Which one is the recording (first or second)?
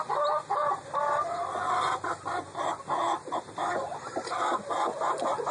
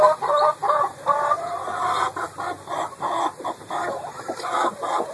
first